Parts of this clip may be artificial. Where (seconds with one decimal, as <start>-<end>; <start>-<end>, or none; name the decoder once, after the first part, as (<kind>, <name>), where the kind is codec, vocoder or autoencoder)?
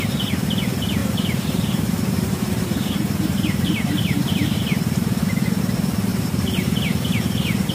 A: 1.0-5.6 (vocoder, BigVGAN v2); 6.1-6.8